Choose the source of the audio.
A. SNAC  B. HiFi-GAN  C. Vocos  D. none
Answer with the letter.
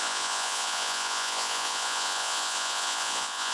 C